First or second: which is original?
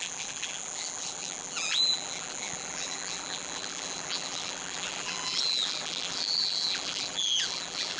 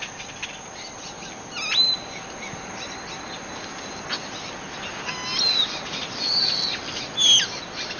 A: second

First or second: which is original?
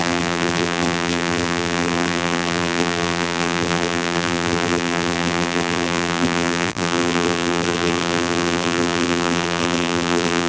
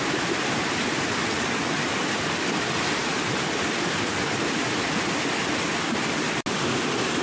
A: second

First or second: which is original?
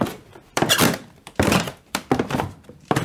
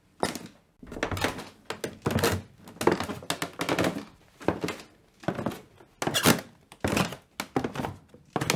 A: second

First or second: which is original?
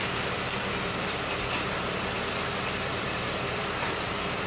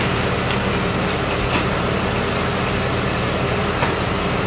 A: second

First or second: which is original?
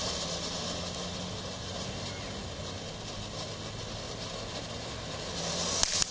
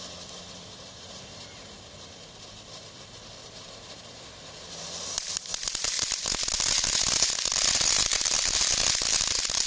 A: first